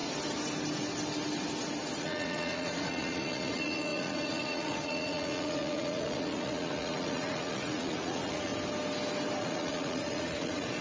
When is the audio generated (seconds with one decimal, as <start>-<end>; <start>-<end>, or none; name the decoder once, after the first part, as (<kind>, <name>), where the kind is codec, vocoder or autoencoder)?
2.0-8.5 (vocoder, Vocos); 9.4-10.8